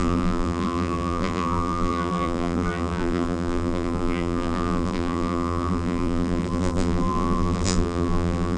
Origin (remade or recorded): remade